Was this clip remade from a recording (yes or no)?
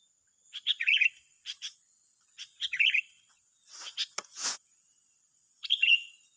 yes